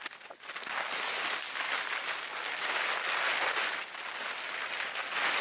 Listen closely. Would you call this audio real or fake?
real